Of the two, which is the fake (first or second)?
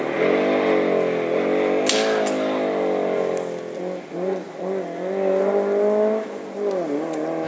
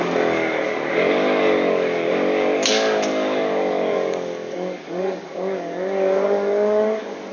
second